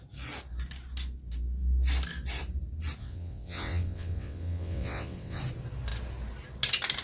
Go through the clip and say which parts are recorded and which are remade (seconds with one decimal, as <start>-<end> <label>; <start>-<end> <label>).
0.0-3.0 recorded; 3.0-5.4 remade; 5.4-7.0 recorded